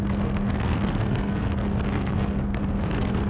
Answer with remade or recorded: remade